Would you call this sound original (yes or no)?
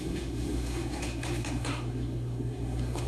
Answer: no